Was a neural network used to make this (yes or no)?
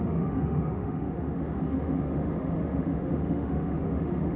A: yes